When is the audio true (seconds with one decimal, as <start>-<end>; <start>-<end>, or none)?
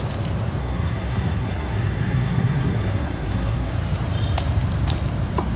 0.0-0.6; 3.7-5.6